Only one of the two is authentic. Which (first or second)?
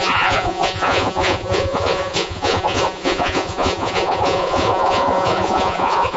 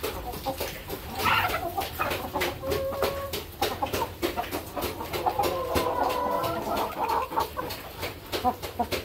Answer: second